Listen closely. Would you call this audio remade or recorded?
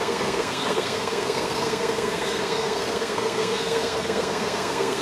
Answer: remade